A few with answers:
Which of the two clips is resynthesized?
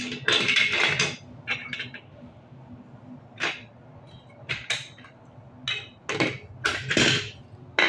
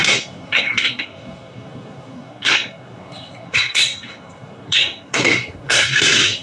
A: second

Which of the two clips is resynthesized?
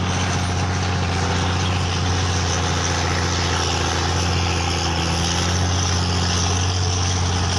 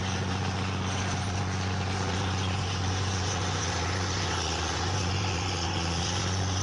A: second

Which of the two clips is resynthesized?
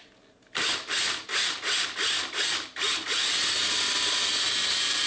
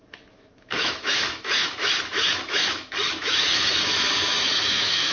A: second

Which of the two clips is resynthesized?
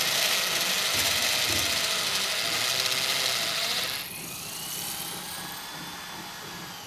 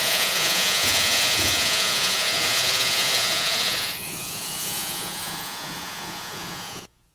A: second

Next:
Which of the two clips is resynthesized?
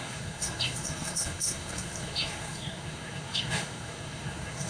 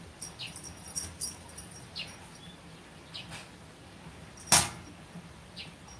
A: first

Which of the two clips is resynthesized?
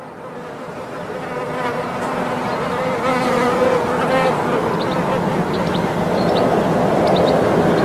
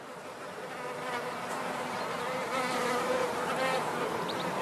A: second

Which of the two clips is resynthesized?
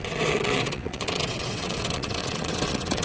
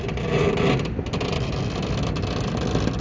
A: first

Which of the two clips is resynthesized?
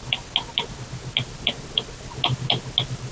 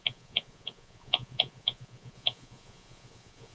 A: second